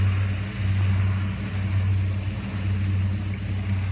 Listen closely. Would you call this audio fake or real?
real